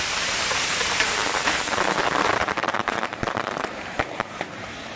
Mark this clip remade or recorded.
remade